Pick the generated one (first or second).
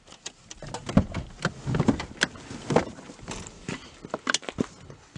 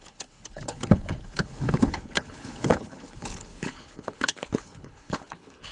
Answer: second